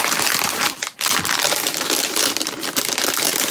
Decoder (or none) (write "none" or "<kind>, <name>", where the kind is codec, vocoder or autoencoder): none